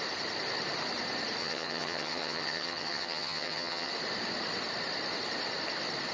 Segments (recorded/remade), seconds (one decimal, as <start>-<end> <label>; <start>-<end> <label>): 0.0-1.4 recorded; 1.4-3.9 remade; 3.9-6.1 recorded